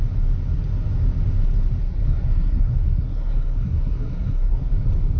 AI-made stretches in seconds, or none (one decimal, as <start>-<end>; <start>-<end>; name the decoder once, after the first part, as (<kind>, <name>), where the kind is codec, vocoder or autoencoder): 1.8-4.7 (codec, SNAC)